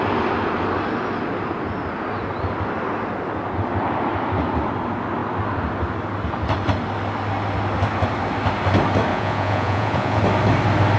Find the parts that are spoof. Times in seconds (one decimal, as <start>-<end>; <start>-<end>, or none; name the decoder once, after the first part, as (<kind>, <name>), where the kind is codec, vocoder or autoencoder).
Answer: 9.1-10.2 (vocoder, Vocos)